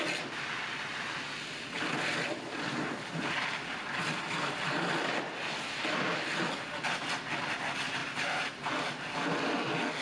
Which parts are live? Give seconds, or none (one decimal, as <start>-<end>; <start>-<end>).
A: 0.0-8.0; 9.1-10.0